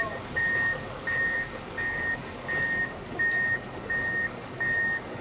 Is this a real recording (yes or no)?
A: no